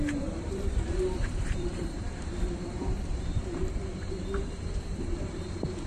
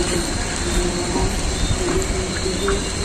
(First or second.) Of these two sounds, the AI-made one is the first